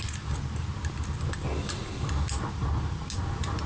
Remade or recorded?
recorded